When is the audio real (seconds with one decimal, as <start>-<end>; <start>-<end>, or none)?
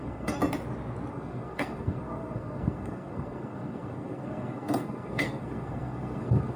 0.4-1.1